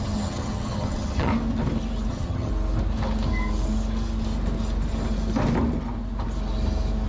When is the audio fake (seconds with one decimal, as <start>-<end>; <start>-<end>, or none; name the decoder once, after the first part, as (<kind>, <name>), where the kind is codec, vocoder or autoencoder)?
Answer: 0.0-1.3 (vocoder, HiFi-GAN); 2.1-2.5